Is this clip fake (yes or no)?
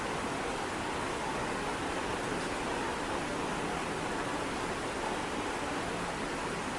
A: no